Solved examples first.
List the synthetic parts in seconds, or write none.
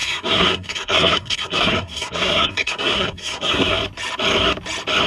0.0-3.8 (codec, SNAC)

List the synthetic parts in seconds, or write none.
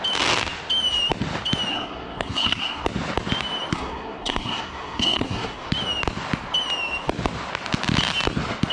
1.7-2.8 (codec, SNAC); 3.7-5.7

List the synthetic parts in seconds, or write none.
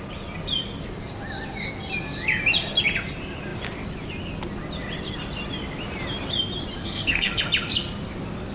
6.8-7.4 (codec, SNAC)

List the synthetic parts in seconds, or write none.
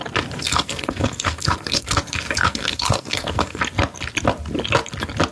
0.4-3.6 (codec, SNAC)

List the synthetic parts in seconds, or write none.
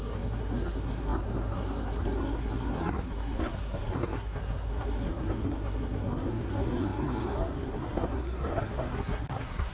0.0-9.7 (codec, SNAC)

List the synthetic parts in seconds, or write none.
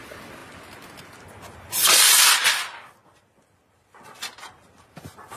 none